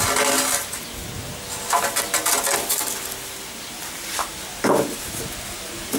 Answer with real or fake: real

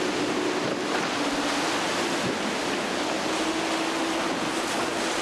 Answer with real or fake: real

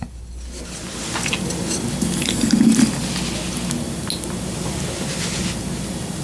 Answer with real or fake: real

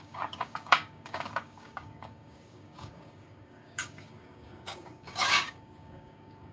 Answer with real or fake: fake